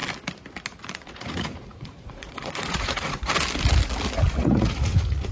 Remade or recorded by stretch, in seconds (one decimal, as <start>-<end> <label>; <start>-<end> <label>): 0.0-0.8 recorded; 0.8-3.3 remade; 3.3-4.3 recorded; 4.3-5.3 remade